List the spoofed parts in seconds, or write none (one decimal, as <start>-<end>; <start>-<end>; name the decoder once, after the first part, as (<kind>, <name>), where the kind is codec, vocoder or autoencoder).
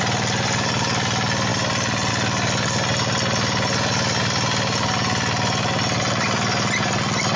none